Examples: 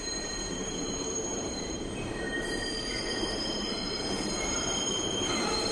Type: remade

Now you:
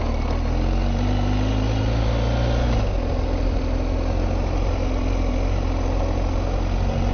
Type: recorded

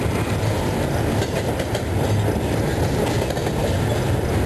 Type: recorded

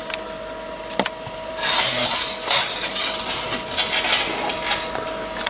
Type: recorded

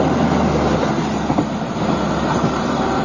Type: recorded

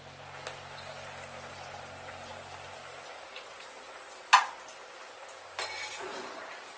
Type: recorded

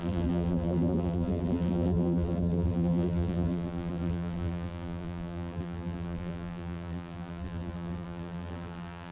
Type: remade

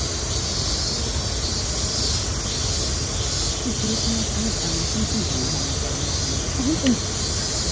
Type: recorded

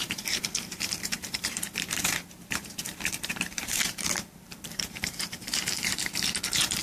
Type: remade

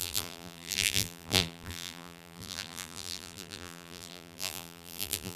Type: remade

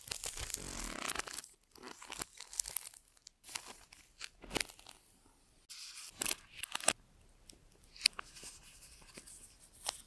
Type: recorded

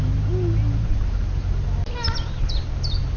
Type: recorded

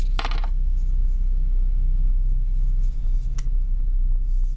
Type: recorded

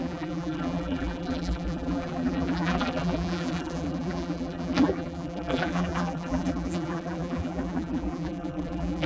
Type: remade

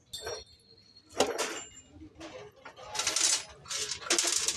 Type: recorded